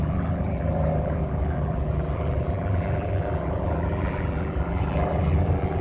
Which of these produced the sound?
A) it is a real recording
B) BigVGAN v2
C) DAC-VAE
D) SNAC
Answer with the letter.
B